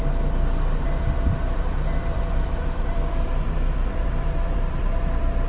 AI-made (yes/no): yes